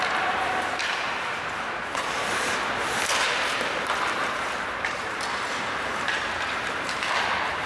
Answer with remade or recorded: remade